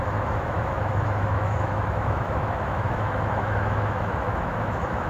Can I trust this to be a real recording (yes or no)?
no